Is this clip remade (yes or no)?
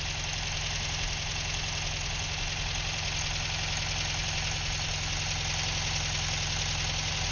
no